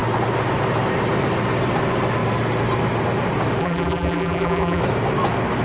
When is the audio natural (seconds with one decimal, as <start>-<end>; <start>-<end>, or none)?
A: 0.0-3.6; 4.8-5.6